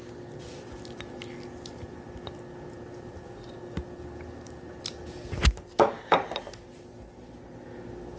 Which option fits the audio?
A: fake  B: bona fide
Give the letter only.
B